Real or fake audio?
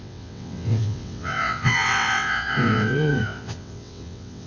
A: fake